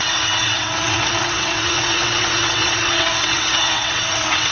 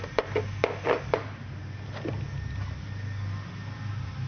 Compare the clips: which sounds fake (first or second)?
first